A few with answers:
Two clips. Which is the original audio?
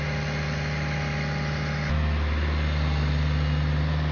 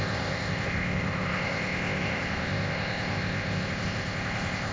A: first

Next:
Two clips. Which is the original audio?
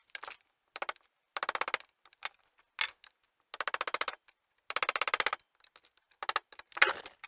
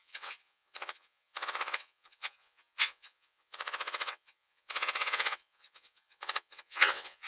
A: first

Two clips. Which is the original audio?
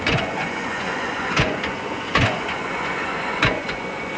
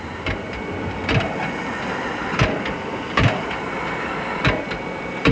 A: second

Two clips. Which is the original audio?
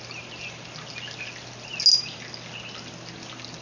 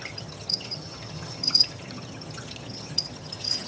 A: first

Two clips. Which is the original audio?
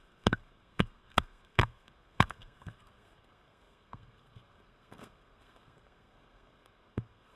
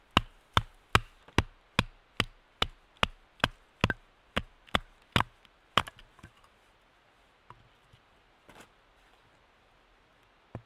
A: second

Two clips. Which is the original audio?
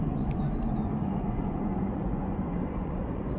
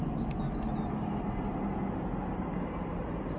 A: second